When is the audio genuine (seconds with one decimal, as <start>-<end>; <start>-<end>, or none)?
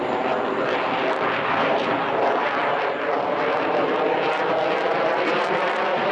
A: 0.0-6.1